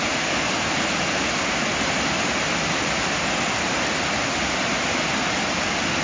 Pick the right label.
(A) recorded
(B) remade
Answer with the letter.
A